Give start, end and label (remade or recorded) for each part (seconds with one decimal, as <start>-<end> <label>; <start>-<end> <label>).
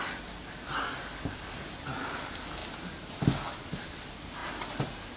0.0-5.2 recorded